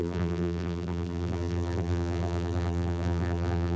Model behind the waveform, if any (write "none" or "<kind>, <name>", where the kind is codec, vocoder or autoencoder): vocoder, BigVGAN v2